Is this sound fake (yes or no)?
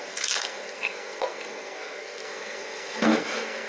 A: yes